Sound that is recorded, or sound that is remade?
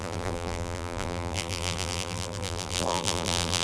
remade